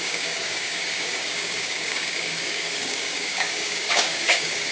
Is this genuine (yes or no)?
no